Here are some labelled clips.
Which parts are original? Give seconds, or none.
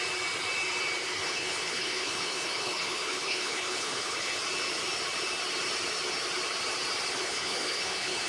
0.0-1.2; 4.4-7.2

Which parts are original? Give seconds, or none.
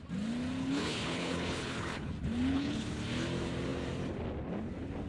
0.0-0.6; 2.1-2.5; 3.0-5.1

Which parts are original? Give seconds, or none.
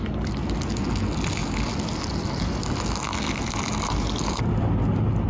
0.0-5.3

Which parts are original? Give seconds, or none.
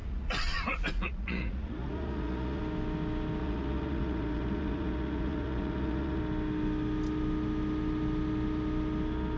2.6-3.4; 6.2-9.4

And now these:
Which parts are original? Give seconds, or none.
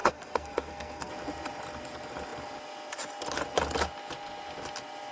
1.1-5.1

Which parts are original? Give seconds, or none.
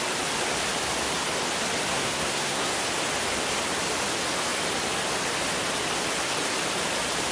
0.0-1.9; 2.7-7.3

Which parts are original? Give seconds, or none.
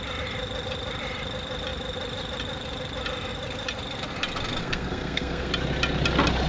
0.0-4.6; 5.5-6.5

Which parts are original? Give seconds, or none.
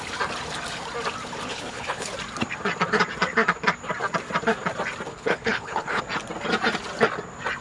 0.0-1.5; 2.1-5.1; 6.0-7.6